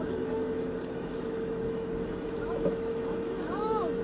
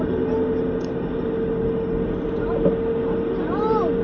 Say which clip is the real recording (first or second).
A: second